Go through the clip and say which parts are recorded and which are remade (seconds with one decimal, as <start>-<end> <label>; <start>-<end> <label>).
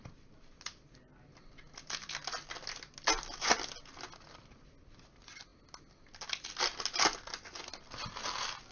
0.0-8.7 recorded